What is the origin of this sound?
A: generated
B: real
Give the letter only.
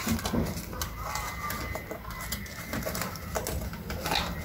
B